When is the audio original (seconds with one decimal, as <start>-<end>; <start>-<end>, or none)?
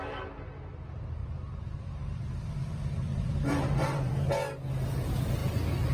0.0-1.2; 2.5-3.1; 4.2-5.9